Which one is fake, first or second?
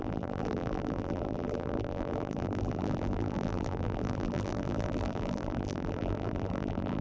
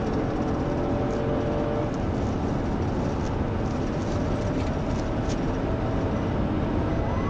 first